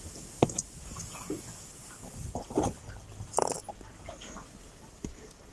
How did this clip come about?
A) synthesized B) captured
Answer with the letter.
B